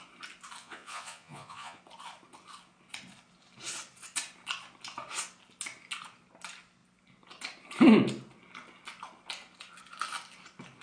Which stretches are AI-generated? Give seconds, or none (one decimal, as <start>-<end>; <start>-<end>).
0.6-1.8